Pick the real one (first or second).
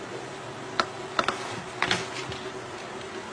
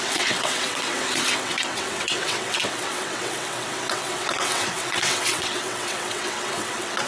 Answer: first